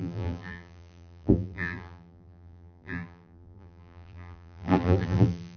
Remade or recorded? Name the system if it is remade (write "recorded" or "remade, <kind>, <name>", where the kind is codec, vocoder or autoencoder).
remade, vocoder, BigVGAN v2